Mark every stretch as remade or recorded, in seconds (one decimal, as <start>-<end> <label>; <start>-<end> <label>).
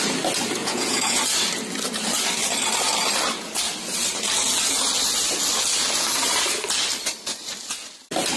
0.0-0.6 recorded; 0.6-1.2 remade; 1.2-8.4 recorded